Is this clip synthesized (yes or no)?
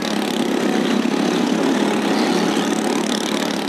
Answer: no